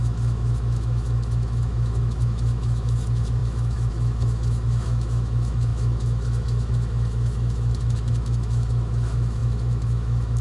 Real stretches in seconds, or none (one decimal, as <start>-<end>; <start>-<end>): none